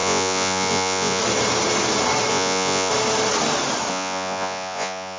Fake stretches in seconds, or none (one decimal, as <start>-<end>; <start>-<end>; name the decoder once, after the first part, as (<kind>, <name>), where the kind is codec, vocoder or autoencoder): 0.0-1.2 (vocoder, Vocos); 2.3-2.9; 3.9-5.2